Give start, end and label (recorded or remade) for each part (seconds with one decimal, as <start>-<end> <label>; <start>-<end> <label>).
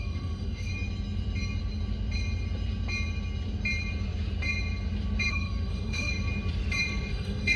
0.0-0.7 remade; 0.7-5.3 recorded; 5.3-6.1 remade; 6.1-7.1 recorded; 7.1-7.6 remade